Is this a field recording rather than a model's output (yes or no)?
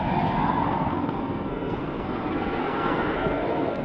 no